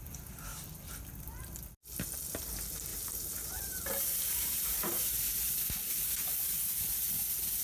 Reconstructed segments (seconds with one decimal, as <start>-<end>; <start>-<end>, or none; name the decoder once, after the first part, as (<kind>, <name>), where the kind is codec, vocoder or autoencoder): 2.9-5.5 (vocoder, BigVGAN v2)